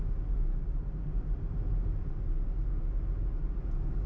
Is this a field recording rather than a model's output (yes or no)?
yes